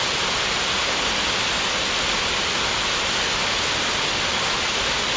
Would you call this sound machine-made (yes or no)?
no